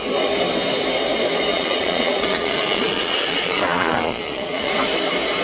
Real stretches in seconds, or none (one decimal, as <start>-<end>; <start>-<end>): 0.0-1.5; 4.7-5.4